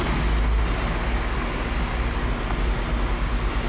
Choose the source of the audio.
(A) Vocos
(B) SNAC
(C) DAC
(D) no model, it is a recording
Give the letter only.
D